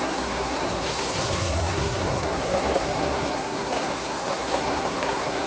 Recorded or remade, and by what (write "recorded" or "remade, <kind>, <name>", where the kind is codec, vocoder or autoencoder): remade, codec, SNAC